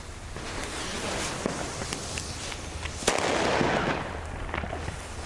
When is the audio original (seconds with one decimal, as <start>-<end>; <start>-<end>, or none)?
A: 0.0-5.3